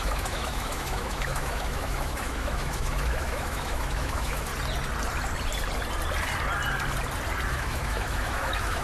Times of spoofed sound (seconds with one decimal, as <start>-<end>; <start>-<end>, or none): 0.0-4.5; 7.5-8.8